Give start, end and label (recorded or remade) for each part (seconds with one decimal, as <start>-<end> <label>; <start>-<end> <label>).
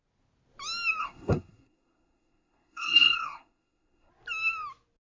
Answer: 0.0-1.0 recorded; 1.0-4.1 remade; 4.1-5.1 recorded